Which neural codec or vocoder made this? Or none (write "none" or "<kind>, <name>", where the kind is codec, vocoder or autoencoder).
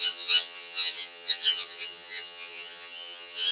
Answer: vocoder, HiFi-GAN